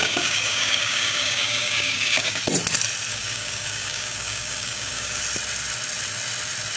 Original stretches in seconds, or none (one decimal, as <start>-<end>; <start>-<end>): 2.4-3.1; 5.2-6.8